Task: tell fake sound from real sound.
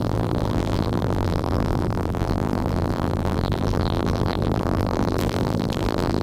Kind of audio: fake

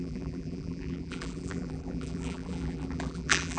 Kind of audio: fake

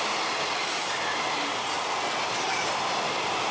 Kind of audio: real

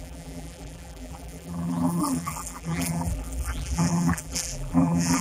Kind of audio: fake